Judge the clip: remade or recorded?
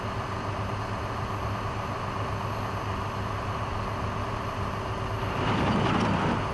recorded